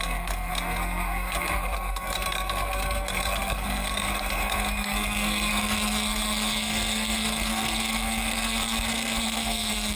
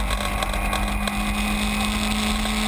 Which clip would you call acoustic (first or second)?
second